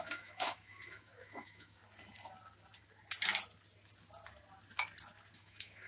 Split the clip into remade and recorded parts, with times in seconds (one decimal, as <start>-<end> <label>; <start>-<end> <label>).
0.0-1.8 remade; 1.8-5.3 recorded; 5.3-5.9 remade